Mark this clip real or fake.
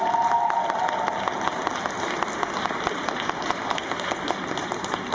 real